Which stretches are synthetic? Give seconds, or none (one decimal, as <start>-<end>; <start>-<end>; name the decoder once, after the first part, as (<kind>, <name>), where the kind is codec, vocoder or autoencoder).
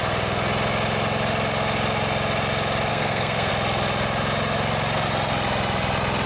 2.9-3.5 (codec, SNAC)